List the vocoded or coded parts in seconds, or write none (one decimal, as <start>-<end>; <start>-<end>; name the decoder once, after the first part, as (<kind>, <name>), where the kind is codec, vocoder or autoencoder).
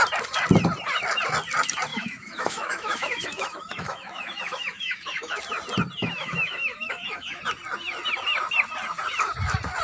1.9-5.4 (autoencoder, DAC-VAE); 6.0-7.4